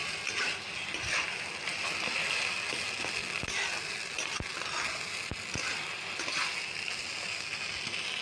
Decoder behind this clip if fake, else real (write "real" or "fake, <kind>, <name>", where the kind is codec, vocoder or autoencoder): real